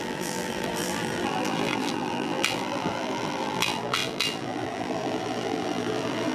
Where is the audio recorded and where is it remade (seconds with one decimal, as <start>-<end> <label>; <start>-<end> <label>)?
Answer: 0.0-6.3 remade